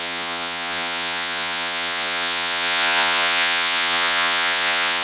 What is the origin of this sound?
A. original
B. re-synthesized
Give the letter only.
B